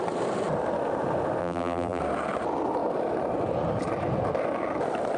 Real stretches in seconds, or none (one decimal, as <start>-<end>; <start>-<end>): 0.0-1.4; 2.0-5.2